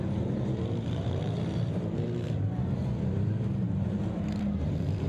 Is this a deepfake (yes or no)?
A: yes